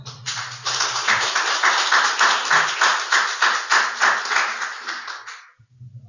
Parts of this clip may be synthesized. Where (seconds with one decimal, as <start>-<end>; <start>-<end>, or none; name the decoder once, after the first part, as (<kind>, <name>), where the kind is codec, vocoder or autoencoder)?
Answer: none